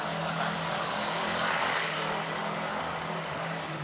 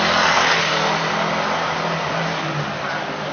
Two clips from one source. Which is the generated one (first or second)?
first